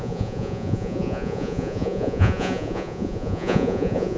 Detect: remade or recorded remade